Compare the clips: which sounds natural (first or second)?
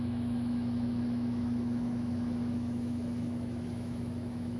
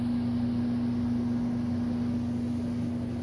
second